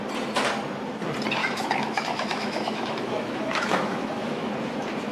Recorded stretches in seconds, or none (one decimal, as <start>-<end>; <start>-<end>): 0.0-1.4; 4.5-5.1